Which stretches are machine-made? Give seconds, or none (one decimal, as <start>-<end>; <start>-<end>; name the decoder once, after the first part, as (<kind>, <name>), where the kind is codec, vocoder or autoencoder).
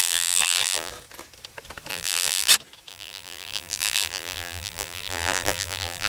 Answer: 0.0-0.9 (vocoder, BigVGAN v2); 1.9-2.5; 2.9-6.1